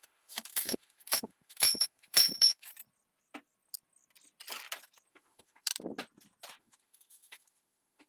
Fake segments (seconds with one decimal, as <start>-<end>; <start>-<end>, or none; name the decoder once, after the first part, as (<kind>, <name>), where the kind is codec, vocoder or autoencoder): 0.0-2.7 (autoencoder, DAC-VAE); 5.1-5.7; 6.6-8.1